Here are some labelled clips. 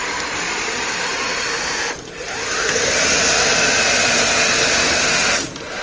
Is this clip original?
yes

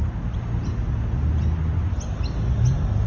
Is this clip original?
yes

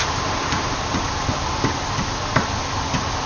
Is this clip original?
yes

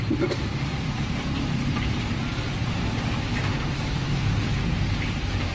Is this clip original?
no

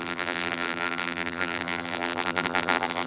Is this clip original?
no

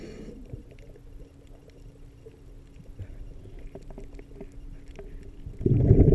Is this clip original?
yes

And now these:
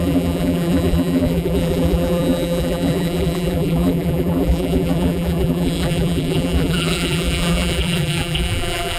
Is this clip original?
no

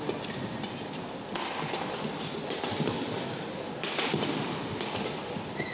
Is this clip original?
yes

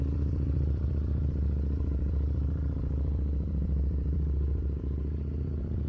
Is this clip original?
no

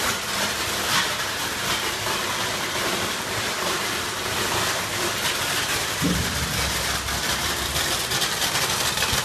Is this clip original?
no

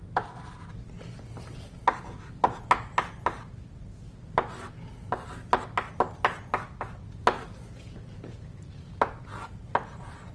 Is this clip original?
yes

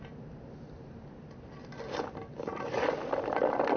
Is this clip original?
yes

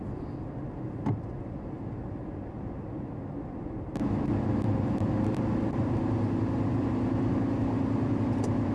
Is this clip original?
no